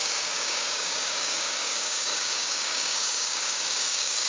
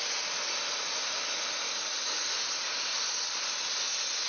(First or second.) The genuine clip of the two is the second